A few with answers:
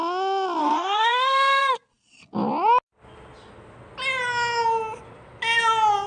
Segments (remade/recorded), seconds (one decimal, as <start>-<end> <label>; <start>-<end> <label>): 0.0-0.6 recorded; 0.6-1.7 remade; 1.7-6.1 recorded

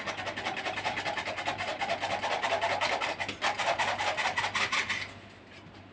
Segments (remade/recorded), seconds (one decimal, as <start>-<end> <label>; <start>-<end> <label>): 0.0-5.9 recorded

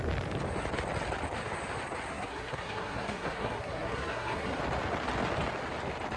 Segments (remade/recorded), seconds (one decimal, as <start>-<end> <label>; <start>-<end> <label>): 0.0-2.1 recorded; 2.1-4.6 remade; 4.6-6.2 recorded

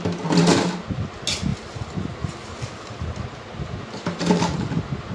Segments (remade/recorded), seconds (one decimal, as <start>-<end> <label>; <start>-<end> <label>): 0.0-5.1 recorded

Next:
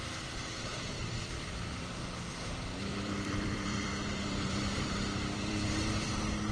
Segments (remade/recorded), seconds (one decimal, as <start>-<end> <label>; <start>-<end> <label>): 0.0-0.7 recorded; 0.7-1.9 remade; 1.9-2.9 recorded; 2.9-6.1 remade; 6.1-6.5 recorded

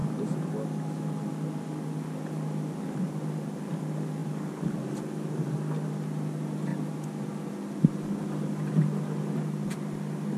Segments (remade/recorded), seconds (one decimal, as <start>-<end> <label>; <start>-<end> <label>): 0.0-10.4 recorded

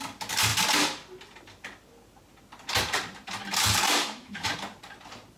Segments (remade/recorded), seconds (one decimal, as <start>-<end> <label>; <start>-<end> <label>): 0.0-4.0 recorded; 4.0-4.5 remade; 4.5-5.4 recorded

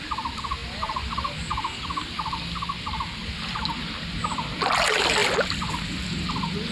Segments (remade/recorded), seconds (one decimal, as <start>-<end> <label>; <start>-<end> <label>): 0.0-6.7 recorded